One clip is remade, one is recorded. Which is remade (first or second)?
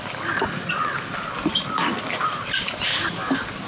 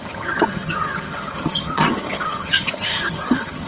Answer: second